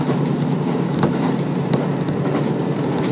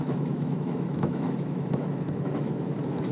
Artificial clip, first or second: second